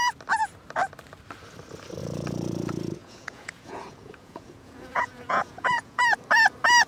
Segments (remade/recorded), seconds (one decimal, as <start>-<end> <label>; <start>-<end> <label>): 0.0-3.0 recorded; 3.0-6.0 remade; 6.0-6.9 recorded

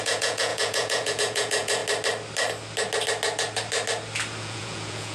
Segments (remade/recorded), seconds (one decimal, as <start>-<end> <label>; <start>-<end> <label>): 0.0-1.8 remade; 1.8-4.4 recorded; 4.4-5.1 remade